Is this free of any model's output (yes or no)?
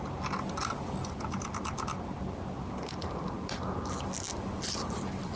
yes